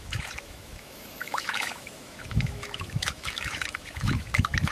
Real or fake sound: fake